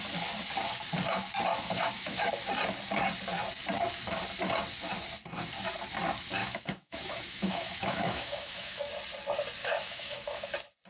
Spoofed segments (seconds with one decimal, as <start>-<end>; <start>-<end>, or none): 1.5-2.3; 6.4-8.9; 9.6-10.5